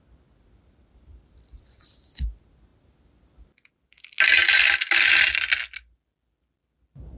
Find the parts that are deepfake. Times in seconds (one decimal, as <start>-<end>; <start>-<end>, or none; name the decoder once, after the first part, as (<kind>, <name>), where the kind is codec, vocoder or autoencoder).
none